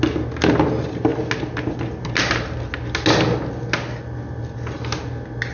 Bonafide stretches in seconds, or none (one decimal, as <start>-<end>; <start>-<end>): 0.0-5.5